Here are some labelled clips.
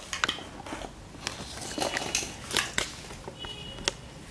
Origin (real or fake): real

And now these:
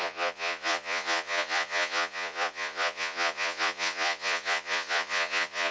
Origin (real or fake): fake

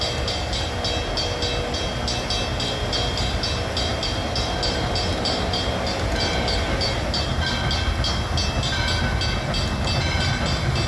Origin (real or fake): real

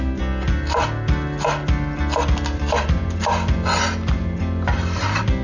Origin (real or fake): real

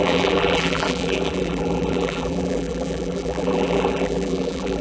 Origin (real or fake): fake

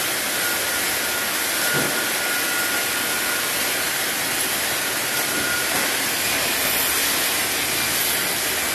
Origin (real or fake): real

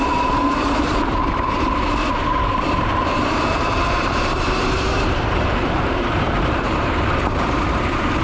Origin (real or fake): fake